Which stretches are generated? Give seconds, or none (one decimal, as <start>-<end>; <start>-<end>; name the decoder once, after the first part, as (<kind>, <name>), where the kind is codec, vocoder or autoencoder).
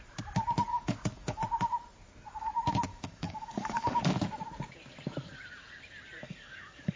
0.7-1.4 (codec, DAC); 2.9-4.0; 6.2-7.0